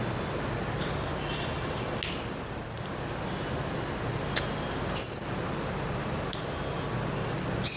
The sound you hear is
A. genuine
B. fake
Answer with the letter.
A